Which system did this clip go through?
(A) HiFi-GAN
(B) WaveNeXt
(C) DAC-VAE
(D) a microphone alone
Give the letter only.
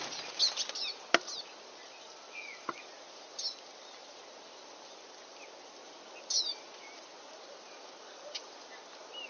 D